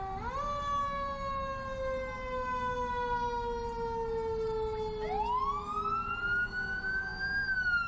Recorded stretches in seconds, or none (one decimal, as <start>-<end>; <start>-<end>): 0.0-7.9